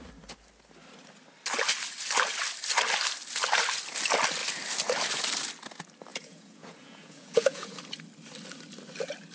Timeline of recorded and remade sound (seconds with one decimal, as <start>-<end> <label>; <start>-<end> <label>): 0.0-6.1 recorded; 6.1-7.8 remade; 7.8-9.3 recorded